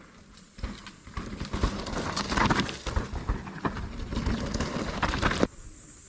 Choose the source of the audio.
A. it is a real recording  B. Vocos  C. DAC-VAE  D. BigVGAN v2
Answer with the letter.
A